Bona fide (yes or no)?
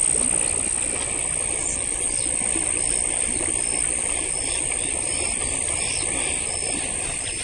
yes